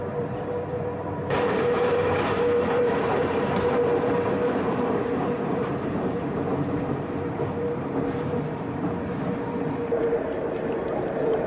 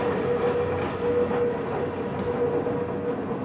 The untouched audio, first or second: second